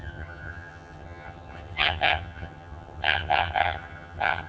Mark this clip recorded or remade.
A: remade